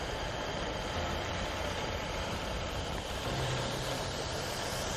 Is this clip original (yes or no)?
no